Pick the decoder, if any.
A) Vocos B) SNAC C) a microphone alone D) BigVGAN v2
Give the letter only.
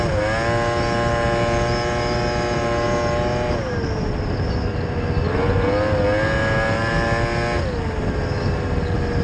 C